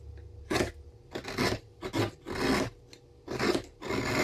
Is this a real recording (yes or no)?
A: yes